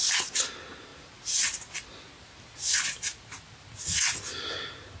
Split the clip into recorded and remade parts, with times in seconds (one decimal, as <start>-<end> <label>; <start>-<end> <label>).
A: 0.0-5.0 recorded